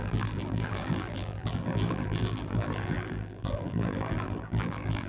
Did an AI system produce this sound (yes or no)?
yes